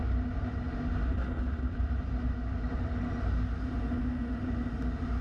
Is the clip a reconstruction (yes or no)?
no